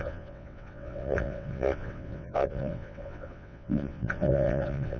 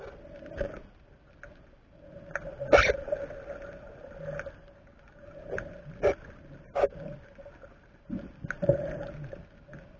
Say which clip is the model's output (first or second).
first